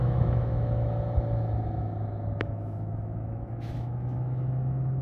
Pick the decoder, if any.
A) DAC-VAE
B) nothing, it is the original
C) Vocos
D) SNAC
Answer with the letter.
A